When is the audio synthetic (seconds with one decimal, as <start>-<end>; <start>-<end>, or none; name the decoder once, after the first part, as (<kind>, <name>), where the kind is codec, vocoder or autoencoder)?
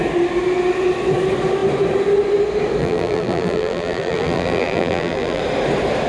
2.8-5.4 (vocoder, BigVGAN v2)